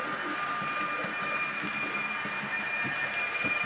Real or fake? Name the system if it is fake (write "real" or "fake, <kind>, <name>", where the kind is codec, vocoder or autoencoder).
real